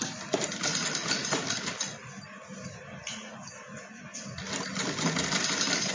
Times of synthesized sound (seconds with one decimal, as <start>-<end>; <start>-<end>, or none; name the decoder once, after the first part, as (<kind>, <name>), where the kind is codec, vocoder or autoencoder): none